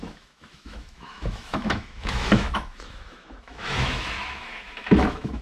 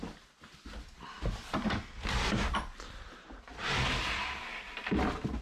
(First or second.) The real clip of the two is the second